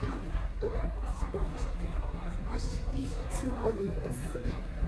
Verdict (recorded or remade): remade